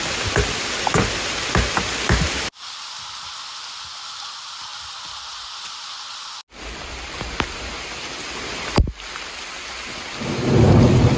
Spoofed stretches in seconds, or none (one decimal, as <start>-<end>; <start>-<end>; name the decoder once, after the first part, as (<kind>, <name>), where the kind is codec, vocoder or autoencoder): none

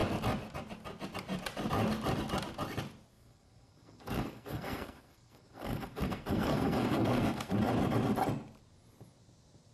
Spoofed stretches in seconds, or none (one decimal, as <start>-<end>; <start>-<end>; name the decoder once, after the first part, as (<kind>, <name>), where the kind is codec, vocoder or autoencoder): 3.1-7.5 (codec, SNAC)

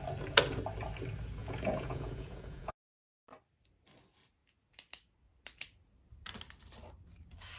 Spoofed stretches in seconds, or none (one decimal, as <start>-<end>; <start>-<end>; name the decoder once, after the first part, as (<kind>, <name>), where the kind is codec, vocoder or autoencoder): 1.4-3.0 (vocoder, Vocos)